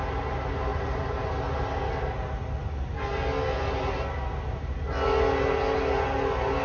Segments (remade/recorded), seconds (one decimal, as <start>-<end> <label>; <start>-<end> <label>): 0.0-0.7 recorded; 0.7-1.2 remade; 1.2-6.6 recorded